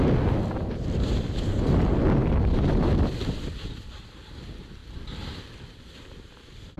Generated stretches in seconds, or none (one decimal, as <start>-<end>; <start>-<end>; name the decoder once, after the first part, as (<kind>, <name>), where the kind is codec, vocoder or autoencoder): 2.2-2.9 (vocoder, BigVGAN v2); 4.8-5.9